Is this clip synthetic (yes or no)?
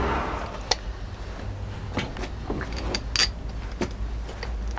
no